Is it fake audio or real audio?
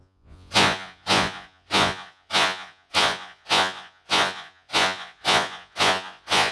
fake